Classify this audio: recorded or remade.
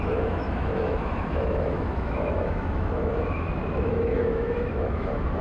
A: remade